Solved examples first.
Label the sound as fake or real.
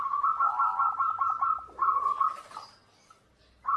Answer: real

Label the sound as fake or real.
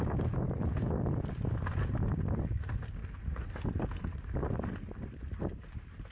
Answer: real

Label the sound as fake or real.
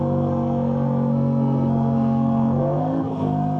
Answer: fake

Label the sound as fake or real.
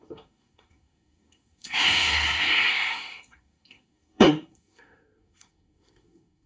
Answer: fake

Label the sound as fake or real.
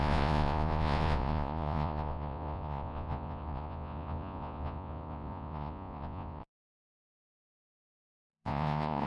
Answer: fake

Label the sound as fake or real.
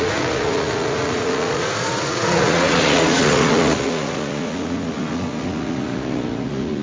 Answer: fake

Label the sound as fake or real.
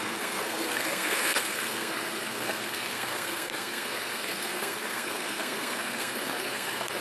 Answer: fake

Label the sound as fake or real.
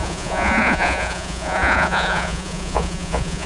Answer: fake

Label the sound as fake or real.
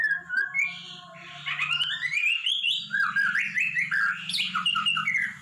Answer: real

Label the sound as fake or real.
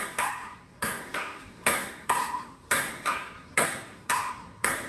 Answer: fake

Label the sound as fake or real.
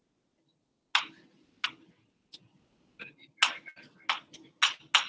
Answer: real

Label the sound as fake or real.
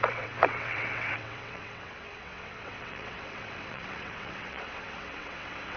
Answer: fake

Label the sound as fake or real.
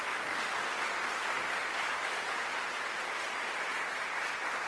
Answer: real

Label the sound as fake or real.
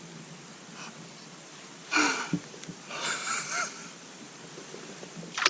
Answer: real